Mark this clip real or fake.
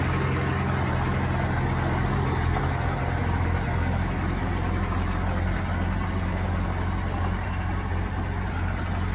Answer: real